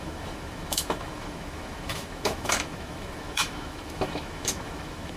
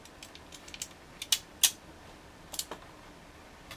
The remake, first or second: first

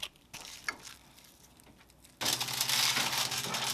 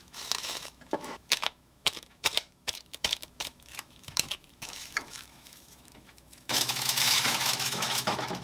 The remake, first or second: second